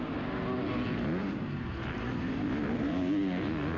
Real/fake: real